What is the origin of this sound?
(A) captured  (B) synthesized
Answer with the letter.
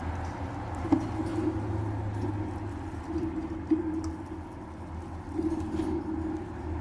A